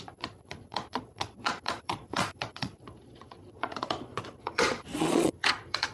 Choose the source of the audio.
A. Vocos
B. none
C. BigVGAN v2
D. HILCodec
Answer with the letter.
A